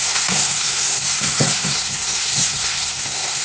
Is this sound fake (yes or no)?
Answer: yes